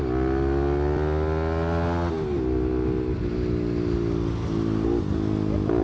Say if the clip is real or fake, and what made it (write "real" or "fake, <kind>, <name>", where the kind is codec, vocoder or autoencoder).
real